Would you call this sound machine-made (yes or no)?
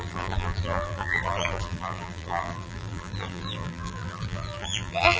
yes